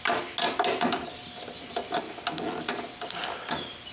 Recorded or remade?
recorded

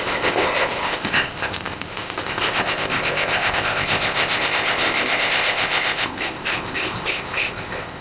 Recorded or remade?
remade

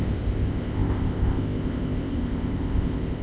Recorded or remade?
remade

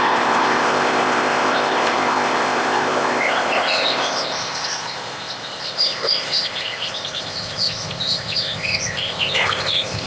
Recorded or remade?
remade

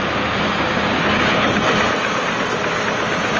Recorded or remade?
recorded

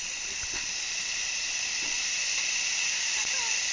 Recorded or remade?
recorded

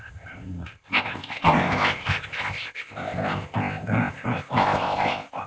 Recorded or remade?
remade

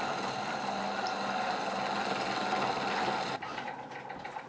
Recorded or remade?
recorded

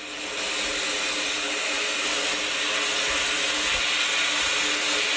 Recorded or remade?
recorded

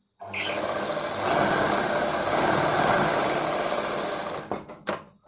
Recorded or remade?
recorded